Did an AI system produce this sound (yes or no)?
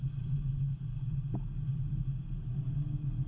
no